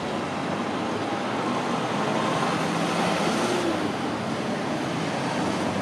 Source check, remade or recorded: recorded